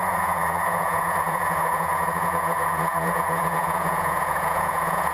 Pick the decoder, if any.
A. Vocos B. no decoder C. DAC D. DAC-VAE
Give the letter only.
A